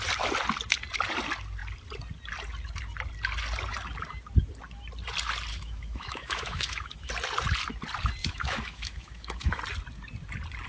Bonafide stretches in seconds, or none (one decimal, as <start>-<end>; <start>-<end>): 0.0-5.5; 7.1-8.2; 9.6-10.7